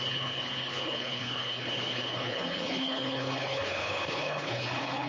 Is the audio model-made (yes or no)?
yes